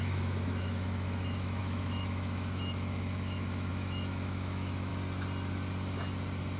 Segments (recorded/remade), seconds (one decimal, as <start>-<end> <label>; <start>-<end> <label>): 0.0-4.9 remade; 4.9-6.6 recorded